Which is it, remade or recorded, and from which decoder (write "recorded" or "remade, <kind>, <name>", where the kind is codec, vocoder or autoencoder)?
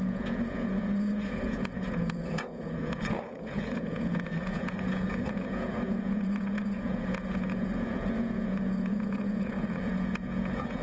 remade, vocoder, Vocos